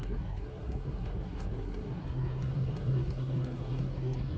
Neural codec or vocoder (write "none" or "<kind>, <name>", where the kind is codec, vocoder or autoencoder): codec, SNAC